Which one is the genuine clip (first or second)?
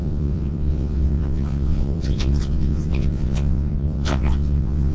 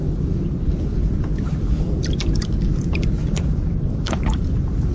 second